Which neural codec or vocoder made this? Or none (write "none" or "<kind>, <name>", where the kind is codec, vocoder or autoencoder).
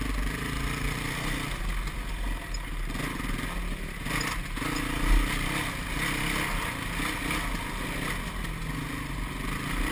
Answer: none